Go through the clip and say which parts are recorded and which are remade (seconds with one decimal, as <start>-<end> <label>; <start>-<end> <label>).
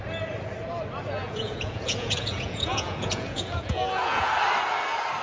0.0-1.2 recorded; 1.2-4.3 remade; 4.3-5.2 recorded